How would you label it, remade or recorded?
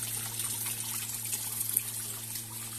recorded